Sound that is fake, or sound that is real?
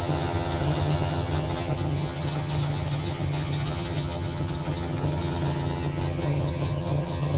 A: fake